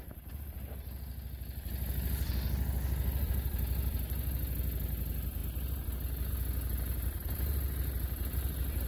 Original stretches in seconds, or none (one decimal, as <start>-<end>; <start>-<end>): 0.0-8.9